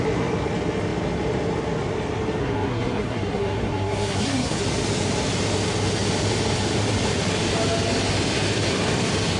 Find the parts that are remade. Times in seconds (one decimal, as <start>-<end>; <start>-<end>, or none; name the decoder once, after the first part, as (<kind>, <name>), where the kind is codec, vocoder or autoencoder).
2.4-4.6 (codec, SNAC)